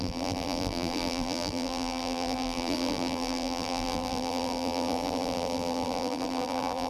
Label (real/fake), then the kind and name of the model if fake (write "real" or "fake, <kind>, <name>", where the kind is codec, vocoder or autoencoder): fake, vocoder, BigVGAN v2